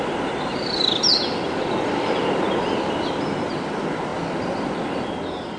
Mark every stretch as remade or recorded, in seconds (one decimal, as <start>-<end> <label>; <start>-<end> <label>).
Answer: 0.0-5.6 recorded